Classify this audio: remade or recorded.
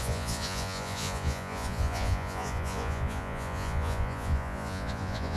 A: remade